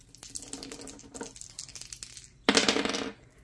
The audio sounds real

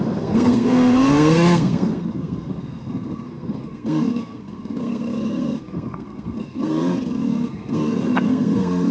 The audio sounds fake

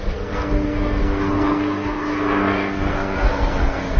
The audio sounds fake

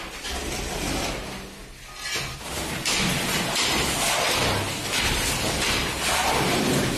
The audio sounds real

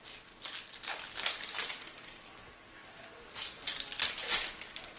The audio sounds real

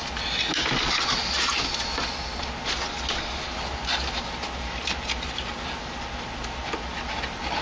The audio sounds real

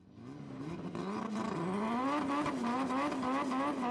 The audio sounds real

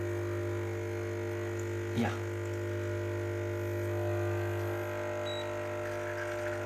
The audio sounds real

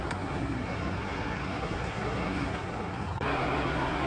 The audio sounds fake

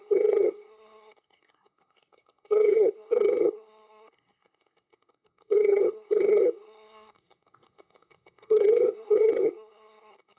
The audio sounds fake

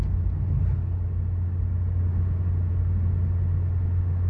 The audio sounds real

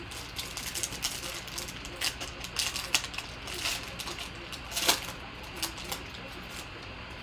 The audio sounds real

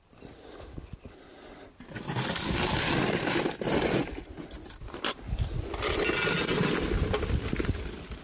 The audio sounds real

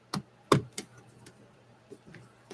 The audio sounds real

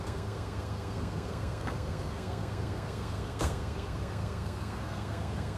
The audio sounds fake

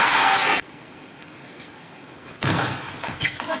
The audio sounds fake